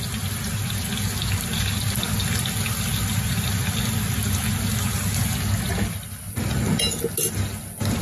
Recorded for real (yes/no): yes